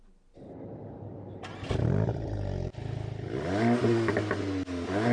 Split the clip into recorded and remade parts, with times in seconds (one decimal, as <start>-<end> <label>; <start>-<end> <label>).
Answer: 0.0-5.1 recorded

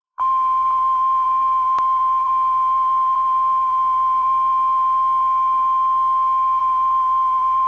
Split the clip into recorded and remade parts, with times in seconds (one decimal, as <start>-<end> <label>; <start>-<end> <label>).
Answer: 0.0-4.5 remade; 4.5-6.6 recorded; 6.6-7.7 remade

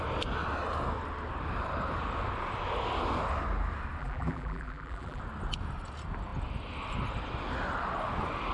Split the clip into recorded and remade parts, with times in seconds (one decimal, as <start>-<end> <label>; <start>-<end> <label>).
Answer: 0.0-4.0 recorded; 4.0-5.2 remade; 5.2-8.5 recorded

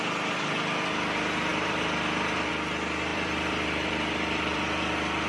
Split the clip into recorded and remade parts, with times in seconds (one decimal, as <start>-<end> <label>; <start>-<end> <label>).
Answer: 0.0-1.5 recorded; 1.5-2.5 remade; 2.5-3.1 recorded; 3.1-4.6 remade; 4.6-5.3 recorded

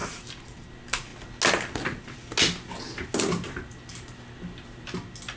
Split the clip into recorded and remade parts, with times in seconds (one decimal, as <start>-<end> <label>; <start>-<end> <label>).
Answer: 0.0-0.7 remade; 0.7-5.4 recorded

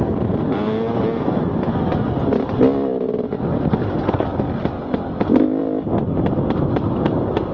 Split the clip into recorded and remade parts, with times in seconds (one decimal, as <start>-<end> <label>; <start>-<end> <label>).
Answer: 0.0-7.5 recorded

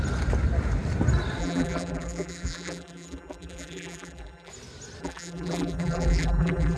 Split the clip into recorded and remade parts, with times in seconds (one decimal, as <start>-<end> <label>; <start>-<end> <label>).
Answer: 0.0-1.4 recorded; 1.4-4.5 remade; 4.5-5.0 recorded; 5.0-6.8 remade